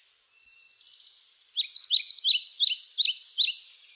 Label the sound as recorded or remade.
recorded